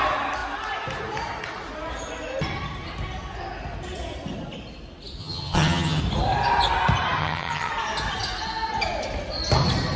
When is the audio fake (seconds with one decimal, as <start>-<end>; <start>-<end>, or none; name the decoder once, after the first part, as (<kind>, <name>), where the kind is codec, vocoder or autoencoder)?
5.2-6.0 (vocoder, HiFi-GAN); 7.2-7.7